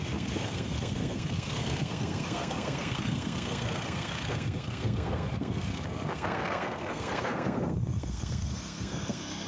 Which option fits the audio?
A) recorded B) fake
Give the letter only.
B